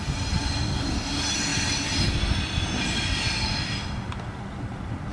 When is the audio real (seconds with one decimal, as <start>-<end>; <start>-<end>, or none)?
0.0-5.1